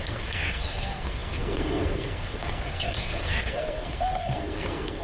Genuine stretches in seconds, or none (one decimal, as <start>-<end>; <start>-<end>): none